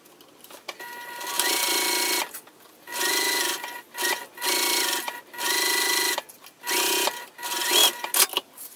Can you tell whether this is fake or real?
real